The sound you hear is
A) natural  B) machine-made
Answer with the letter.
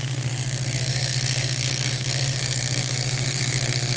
B